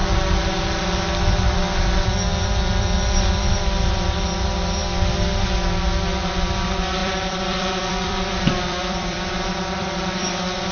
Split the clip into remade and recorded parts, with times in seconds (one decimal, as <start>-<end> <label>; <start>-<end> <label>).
0.0-7.0 recorded; 7.0-10.7 remade